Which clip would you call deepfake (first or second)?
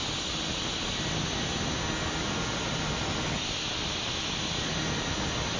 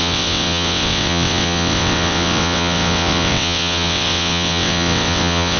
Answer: second